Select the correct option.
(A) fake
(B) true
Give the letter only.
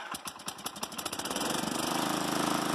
A